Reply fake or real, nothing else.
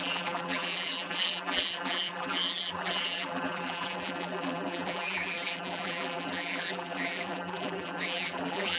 fake